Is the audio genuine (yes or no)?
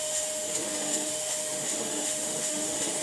no